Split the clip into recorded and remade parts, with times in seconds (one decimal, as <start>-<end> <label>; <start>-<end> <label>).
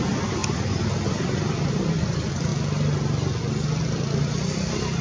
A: 0.0-5.0 recorded